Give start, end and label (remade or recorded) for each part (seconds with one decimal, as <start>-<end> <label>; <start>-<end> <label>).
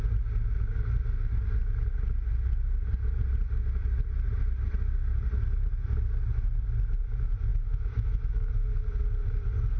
0.0-7.5 recorded; 7.5-8.5 remade; 8.5-9.8 recorded